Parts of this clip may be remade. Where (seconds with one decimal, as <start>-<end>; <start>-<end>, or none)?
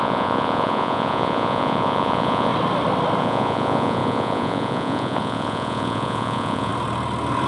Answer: 0.0-2.5; 3.2-6.7